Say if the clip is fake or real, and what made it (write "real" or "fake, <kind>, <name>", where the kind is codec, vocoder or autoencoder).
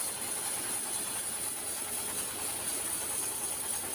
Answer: real